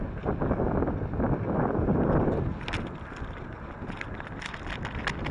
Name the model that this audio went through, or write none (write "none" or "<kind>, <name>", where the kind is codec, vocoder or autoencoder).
none